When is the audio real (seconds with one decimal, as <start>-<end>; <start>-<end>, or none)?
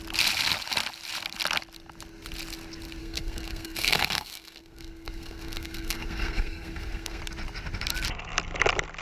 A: 0.0-3.0; 7.2-9.0